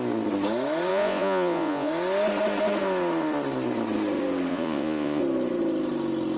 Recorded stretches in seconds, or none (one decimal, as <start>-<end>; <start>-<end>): 0.0-0.9; 1.9-4.5; 5.2-6.4